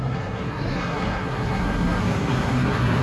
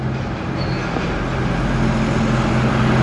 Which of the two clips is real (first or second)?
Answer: second